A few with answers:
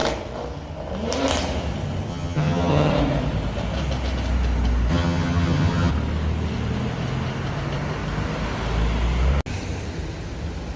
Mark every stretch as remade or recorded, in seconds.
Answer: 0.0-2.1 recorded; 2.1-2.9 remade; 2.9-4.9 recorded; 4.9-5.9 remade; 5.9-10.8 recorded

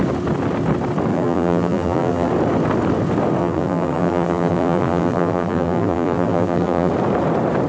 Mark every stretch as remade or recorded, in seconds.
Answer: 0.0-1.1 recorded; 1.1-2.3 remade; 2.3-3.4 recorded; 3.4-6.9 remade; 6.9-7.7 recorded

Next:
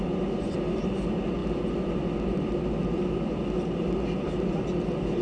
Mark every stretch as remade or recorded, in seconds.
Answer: 0.0-5.2 recorded

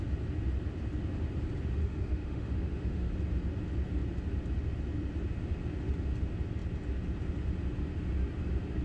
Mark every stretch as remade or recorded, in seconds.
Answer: 0.0-1.8 recorded; 1.8-3.1 remade; 3.1-8.8 recorded

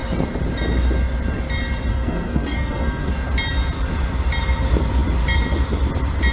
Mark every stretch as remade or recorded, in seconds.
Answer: 0.0-1.9 recorded; 1.9-3.1 remade; 3.1-6.3 recorded

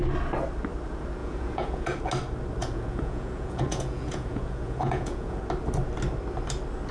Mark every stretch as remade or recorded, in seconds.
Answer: 0.0-1.2 recorded; 1.2-2.0 remade; 2.0-2.6 recorded; 2.6-5.4 remade; 5.4-6.9 recorded

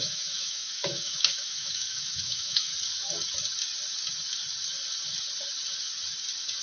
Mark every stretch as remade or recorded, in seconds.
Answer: 0.0-2.7 remade; 2.7-6.6 recorded